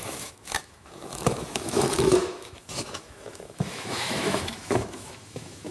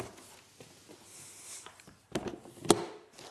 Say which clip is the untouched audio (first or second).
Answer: second